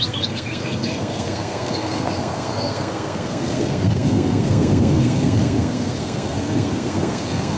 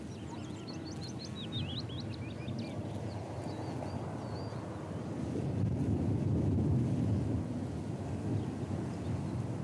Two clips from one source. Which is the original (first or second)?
second